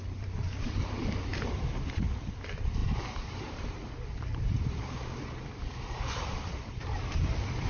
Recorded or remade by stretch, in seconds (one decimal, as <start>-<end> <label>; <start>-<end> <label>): 0.0-1.3 remade; 1.3-2.0 recorded; 2.0-7.7 remade